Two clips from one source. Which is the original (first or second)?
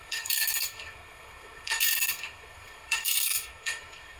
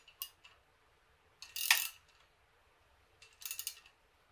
second